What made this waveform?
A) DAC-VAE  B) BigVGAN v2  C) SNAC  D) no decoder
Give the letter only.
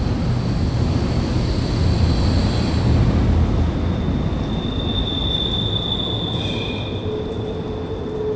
D